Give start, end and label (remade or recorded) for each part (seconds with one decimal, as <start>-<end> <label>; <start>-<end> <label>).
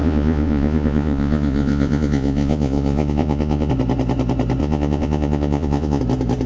0.0-3.7 remade; 3.7-4.6 recorded; 4.6-6.0 remade; 6.0-6.5 recorded